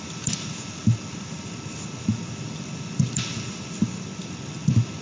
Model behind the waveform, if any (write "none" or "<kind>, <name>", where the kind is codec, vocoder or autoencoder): none